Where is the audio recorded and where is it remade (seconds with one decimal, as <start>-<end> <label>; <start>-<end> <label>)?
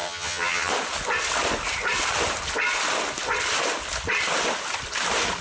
0.0-0.7 remade; 0.7-5.4 recorded